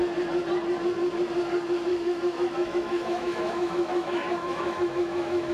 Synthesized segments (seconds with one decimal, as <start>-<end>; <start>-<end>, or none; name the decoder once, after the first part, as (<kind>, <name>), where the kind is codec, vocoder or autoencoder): 1.9-5.5 (autoencoder, DAC-VAE)